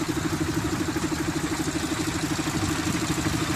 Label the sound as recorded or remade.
recorded